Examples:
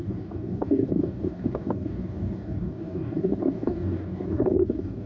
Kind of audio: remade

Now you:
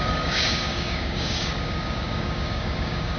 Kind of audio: remade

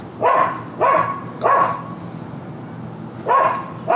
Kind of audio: recorded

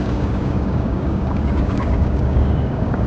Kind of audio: remade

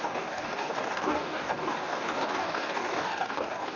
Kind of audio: remade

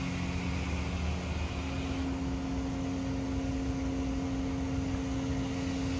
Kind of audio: recorded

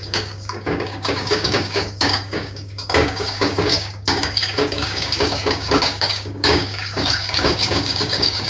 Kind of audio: remade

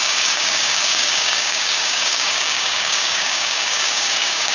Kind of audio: remade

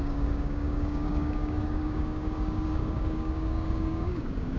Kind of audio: remade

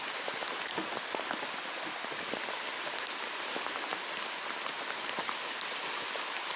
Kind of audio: recorded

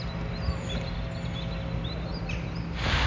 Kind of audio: recorded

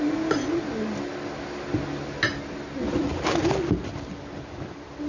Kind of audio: recorded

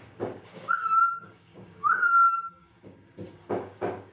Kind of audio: remade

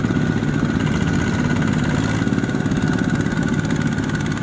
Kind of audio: recorded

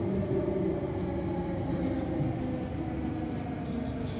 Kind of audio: recorded